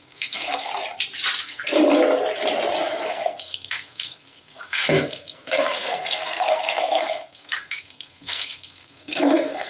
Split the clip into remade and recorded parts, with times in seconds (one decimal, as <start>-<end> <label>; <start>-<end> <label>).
0.0-0.7 remade; 0.7-1.4 recorded; 1.4-1.8 remade; 1.8-2.9 recorded; 2.9-9.7 remade